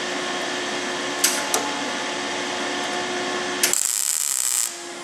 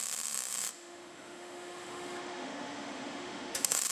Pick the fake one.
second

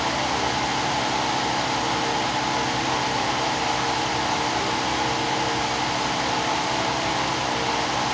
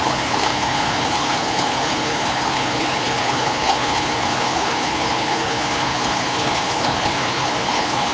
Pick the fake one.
second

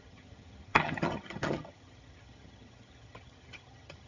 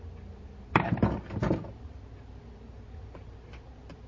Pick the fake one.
first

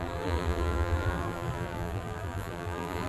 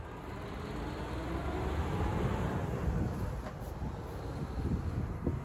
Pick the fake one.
first